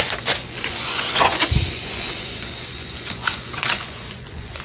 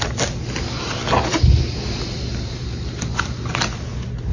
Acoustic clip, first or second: second